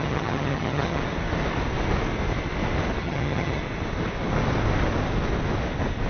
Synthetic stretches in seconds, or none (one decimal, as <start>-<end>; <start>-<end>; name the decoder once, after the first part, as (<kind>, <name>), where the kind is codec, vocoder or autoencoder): 0.0-1.0 (vocoder, HiFi-GAN); 3.0-3.6